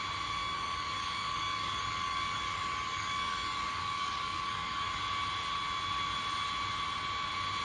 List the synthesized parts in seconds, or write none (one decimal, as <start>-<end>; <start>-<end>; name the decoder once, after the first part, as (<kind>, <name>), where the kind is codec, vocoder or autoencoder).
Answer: 0.4-5.0 (codec, DAC)